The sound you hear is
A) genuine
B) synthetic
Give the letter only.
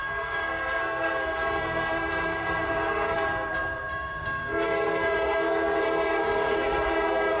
B